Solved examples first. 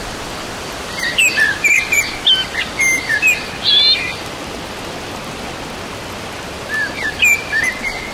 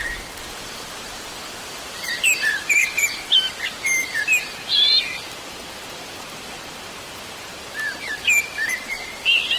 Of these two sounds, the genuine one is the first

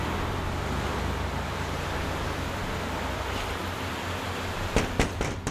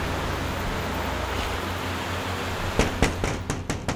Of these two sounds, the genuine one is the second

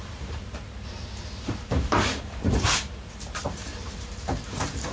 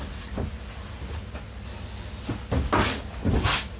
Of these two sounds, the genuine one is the second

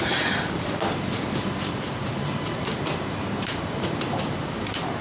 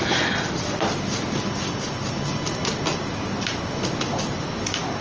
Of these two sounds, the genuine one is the second